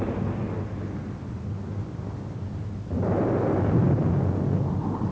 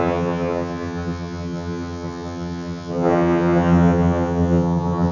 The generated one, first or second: second